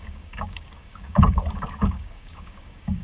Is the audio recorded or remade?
remade